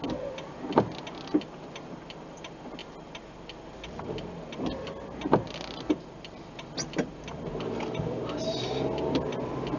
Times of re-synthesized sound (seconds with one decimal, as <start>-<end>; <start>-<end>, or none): none